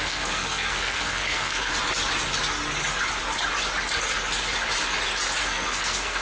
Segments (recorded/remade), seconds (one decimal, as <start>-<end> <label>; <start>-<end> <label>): 0.0-1.7 remade; 1.7-5.4 recorded; 5.4-6.2 remade